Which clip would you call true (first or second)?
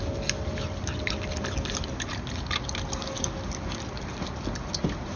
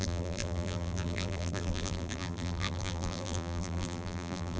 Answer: first